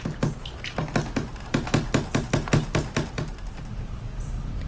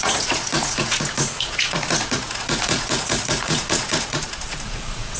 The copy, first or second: second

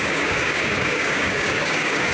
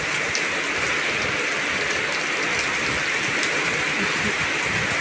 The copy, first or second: first